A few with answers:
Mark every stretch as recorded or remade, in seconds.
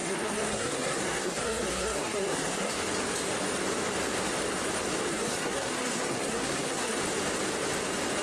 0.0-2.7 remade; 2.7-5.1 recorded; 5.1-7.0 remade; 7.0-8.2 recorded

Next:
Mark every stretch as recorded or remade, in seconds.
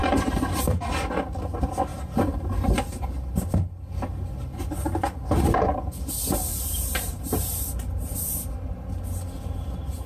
0.0-0.6 remade; 0.6-1.9 recorded; 1.9-2.8 remade; 2.8-6.5 recorded; 6.5-7.5 remade; 7.5-10.1 recorded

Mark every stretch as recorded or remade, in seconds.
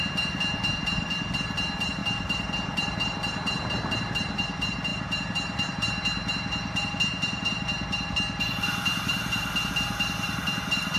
0.0-11.0 recorded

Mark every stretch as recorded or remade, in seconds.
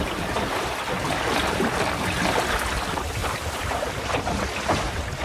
0.0-3.2 recorded; 3.2-4.3 remade; 4.3-5.2 recorded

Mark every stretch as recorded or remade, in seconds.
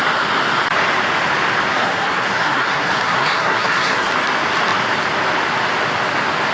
0.0-1.7 recorded; 1.7-4.1 remade; 4.1-6.5 recorded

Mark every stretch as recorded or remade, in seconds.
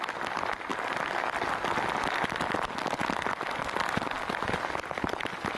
0.0-3.0 recorded; 3.0-3.5 remade; 3.5-5.6 recorded